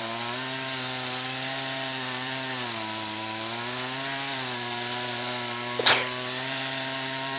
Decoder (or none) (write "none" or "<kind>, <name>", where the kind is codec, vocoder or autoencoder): vocoder, BigVGAN v2